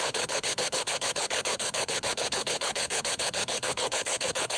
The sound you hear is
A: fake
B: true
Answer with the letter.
A